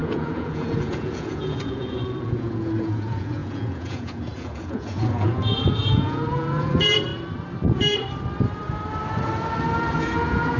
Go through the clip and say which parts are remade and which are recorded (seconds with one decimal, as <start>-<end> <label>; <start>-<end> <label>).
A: 0.0-7.1 remade; 7.1-10.0 recorded; 10.0-10.6 remade